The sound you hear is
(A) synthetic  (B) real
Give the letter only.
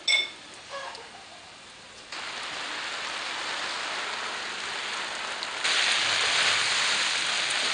B